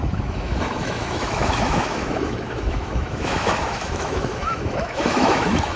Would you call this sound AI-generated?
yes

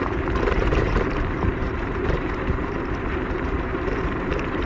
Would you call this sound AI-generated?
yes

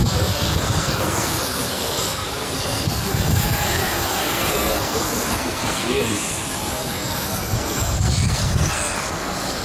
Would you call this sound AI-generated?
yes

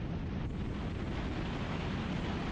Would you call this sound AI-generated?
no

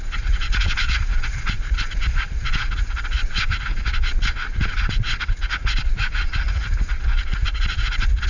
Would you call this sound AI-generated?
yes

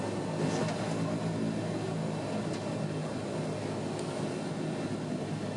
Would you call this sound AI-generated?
no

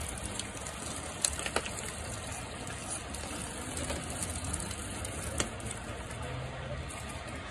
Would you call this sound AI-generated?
no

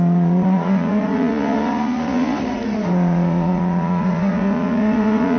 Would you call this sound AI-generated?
yes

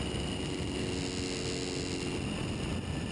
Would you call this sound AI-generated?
no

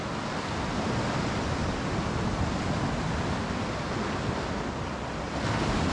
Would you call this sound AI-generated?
no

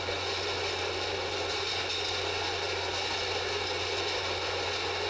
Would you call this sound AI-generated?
no